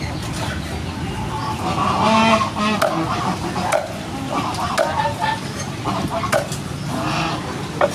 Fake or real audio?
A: real